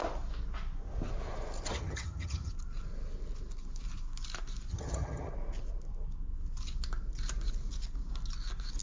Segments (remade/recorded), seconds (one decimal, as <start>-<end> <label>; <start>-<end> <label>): 0.0-1.7 recorded; 1.7-2.5 remade; 2.5-4.7 recorded; 4.7-5.3 remade; 5.3-8.8 recorded